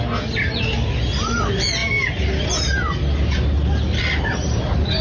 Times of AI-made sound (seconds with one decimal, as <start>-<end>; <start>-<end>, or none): none